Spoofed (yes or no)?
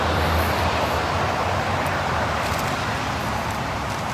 yes